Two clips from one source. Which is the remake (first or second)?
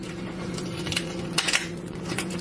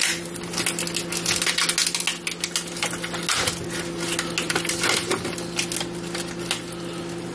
first